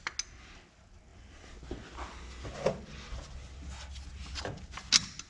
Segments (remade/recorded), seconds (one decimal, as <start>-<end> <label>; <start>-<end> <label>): 0.0-5.3 recorded